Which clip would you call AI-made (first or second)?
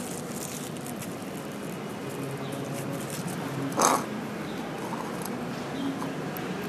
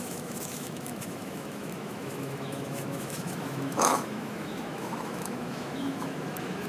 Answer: second